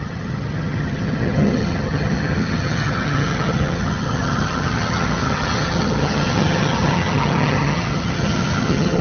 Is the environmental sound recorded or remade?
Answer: remade